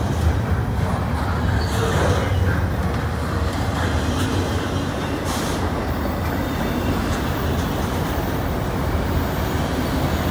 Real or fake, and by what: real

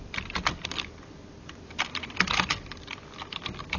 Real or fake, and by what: fake, vocoder, BigVGAN v2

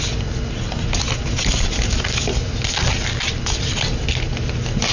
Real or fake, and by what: real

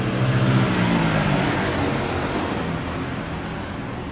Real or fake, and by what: real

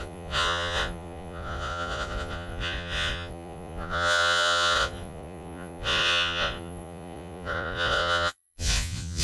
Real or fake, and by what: fake, vocoder, Vocos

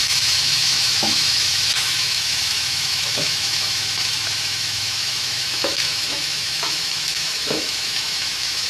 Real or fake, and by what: fake, autoencoder, DAC-VAE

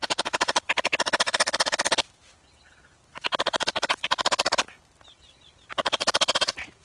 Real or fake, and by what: real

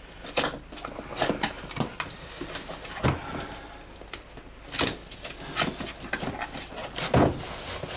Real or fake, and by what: real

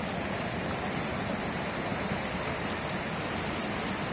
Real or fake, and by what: real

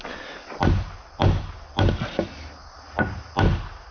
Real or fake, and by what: real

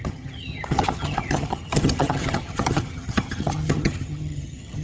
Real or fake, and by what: fake, vocoder, HiFi-GAN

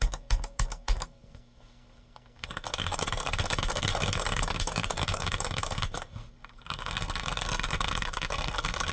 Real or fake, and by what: fake, codec, SNAC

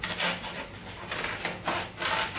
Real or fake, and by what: real